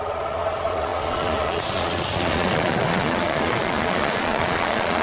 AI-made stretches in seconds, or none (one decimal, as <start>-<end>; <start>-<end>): 0.0-5.0